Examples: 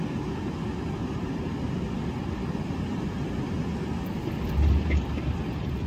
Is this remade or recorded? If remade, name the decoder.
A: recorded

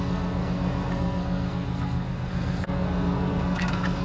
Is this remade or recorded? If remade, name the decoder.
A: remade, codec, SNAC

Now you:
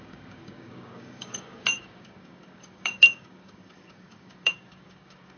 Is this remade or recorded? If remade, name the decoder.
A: remade, codec, DAC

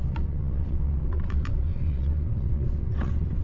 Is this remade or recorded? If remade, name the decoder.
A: remade, vocoder, WaveNeXt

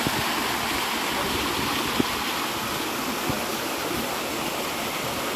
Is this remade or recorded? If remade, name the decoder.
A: recorded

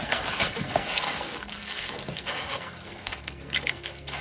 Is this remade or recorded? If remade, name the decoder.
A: remade, codec, SNAC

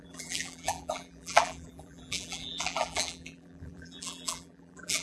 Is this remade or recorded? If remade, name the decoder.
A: remade, vocoder, BigVGAN v2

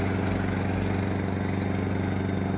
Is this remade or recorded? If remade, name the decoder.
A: recorded